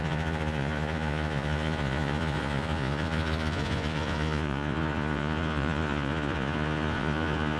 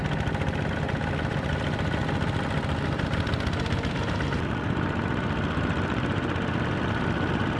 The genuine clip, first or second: second